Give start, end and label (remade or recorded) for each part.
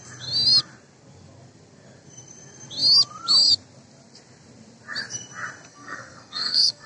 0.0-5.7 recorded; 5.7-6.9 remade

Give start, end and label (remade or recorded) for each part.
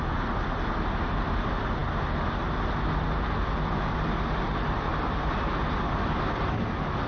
0.0-7.1 recorded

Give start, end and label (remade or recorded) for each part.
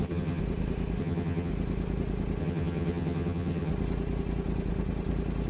0.0-0.4 remade; 0.4-1.0 recorded; 1.0-1.5 remade; 1.5-2.4 recorded; 2.4-3.7 remade; 3.7-5.5 recorded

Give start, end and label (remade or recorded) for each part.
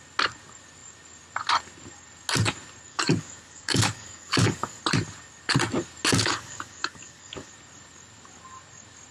0.0-2.9 recorded; 2.9-4.8 remade; 4.8-6.1 recorded; 6.1-7.5 remade; 7.5-9.1 recorded